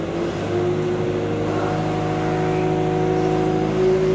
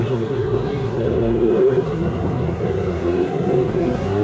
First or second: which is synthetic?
second